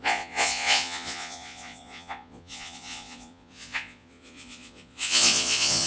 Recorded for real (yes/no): no